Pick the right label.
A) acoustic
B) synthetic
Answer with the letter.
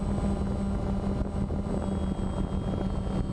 A